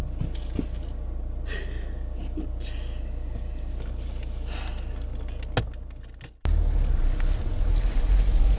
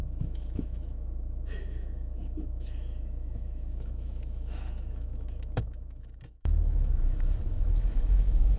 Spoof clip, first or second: second